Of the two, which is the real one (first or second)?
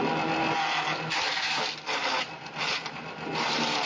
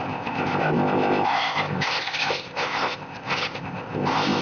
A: first